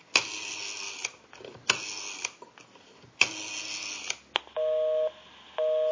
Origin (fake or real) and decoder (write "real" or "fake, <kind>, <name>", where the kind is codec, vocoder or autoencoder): real